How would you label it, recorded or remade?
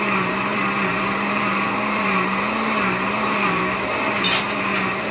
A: remade